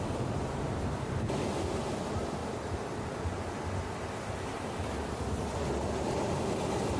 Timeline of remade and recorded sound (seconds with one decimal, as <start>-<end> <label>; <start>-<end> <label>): 0.0-7.0 recorded

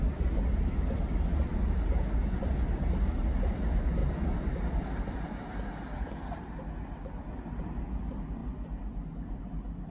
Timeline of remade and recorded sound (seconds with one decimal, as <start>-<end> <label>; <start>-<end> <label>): 0.0-9.9 recorded

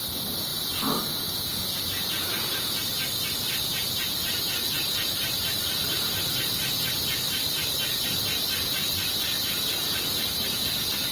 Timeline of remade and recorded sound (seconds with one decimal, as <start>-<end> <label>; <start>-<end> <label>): 0.0-4.2 recorded; 4.2-5.5 remade; 5.5-11.1 recorded

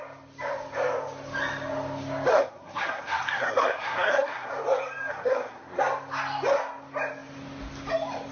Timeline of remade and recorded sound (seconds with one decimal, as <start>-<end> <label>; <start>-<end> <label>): 0.0-2.3 recorded; 2.3-4.5 remade; 4.5-5.1 recorded; 5.1-5.8 remade; 5.8-8.3 recorded

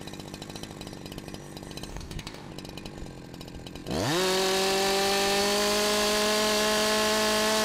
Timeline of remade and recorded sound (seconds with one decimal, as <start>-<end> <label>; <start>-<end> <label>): 0.0-1.9 recorded; 1.9-2.5 remade; 2.5-7.6 recorded

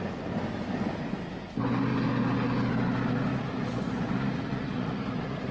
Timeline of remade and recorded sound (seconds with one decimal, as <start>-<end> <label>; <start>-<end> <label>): 0.0-3.3 recorded; 3.3-5.5 remade